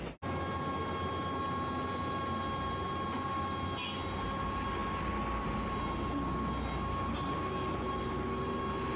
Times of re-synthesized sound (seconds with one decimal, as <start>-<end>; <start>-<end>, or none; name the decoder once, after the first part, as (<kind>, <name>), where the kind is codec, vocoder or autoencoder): none